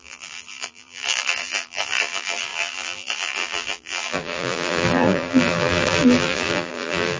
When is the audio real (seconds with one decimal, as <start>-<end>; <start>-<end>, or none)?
none